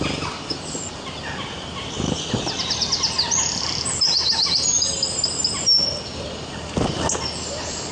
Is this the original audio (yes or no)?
yes